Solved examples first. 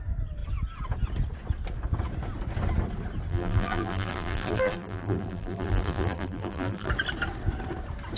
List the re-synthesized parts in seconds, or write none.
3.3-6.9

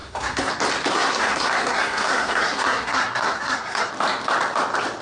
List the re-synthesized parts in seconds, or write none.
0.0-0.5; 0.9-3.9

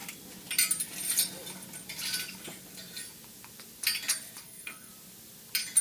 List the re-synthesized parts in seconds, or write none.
4.4-4.9

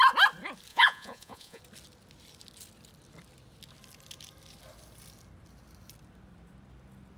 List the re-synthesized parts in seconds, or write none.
0.7-1.6

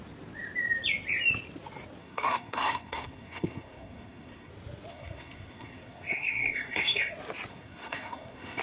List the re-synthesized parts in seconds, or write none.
2.0-4.5; 4.9-7.1; 7.5-8.6